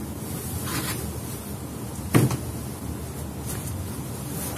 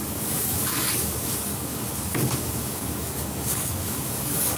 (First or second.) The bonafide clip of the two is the first